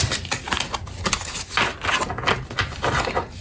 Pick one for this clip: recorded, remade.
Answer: recorded